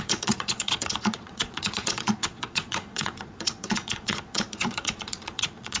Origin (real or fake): fake